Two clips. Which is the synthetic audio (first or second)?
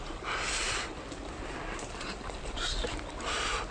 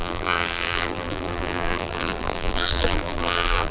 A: second